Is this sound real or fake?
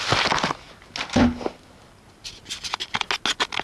real